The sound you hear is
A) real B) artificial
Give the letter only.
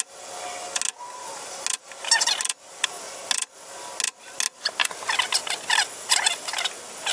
A